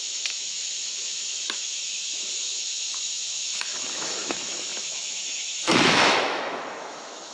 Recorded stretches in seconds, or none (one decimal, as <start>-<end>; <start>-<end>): none